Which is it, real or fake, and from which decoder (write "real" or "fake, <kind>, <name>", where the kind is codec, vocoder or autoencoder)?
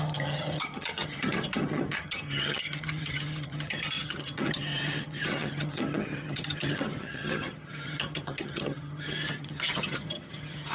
fake, vocoder, HiFi-GAN